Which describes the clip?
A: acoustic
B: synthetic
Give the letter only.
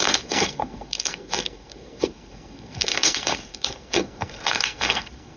B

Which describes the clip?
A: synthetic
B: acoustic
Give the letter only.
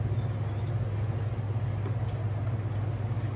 B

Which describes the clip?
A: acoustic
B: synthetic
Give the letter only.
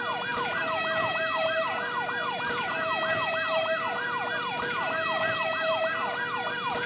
A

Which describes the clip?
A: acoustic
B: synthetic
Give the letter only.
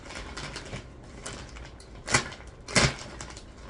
A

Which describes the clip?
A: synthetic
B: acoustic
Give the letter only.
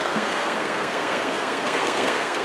A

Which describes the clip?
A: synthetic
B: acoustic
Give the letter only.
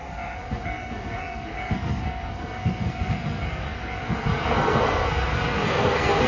A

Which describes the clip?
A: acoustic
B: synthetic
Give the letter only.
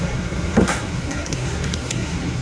B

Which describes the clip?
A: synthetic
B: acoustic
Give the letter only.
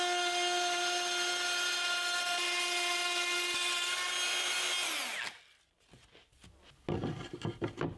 B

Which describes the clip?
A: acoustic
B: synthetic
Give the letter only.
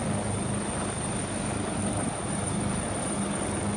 A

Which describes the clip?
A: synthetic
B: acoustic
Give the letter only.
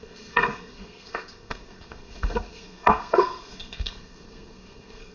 A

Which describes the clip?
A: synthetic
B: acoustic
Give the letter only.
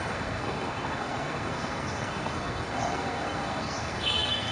A